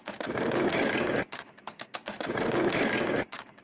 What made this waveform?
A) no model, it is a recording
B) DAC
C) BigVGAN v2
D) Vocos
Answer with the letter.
B